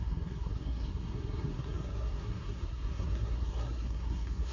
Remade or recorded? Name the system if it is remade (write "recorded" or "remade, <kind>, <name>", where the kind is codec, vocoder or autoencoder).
remade, codec, SNAC